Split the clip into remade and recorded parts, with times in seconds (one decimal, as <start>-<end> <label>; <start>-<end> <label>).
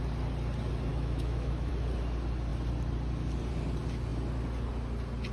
0.0-0.9 recorded; 0.9-1.7 remade; 1.7-5.3 recorded